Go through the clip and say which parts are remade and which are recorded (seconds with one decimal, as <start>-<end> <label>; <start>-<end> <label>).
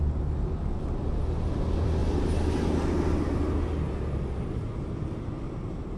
0.0-6.0 recorded